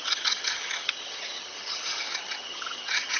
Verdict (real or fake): fake